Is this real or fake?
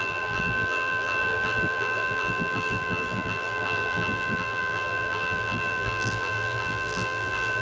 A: fake